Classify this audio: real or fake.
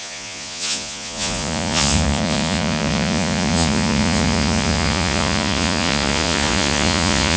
fake